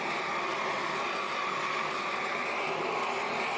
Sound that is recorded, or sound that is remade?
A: recorded